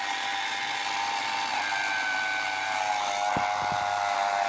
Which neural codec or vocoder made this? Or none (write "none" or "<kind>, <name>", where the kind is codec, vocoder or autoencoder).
none